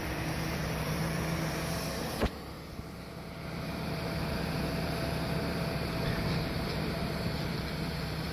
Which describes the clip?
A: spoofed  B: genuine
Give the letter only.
A